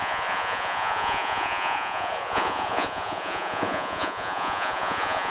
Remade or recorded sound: remade